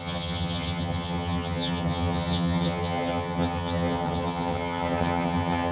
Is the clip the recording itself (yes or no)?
no